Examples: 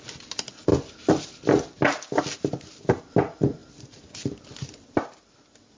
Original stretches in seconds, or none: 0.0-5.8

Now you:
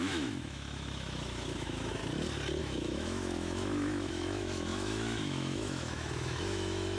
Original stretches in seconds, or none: 2.0-2.6

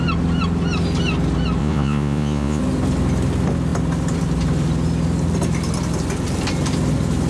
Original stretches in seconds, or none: 0.0-1.6; 2.6-7.3